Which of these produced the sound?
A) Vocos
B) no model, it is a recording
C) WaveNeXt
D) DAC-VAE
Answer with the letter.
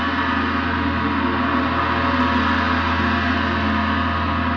B